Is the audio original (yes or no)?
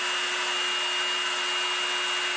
yes